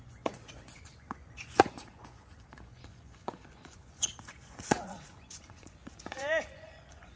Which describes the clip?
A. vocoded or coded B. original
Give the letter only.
A